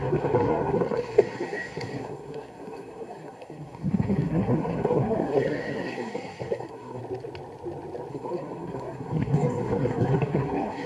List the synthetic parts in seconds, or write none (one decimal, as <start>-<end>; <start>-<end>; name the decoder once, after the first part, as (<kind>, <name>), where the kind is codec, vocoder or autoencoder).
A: 0.0-7.0 (codec, SNAC); 8.1-10.9